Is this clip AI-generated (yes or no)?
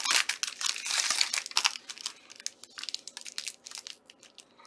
no